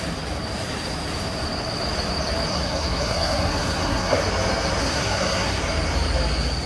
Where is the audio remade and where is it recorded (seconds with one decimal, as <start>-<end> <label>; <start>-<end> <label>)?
0.0-2.5 recorded; 2.5-4.2 remade; 4.2-4.8 recorded; 4.8-5.6 remade; 5.6-6.7 recorded